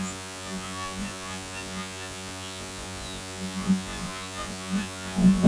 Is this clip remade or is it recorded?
remade